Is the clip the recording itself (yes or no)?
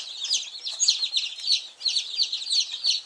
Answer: yes